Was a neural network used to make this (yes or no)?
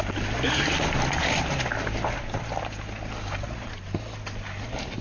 no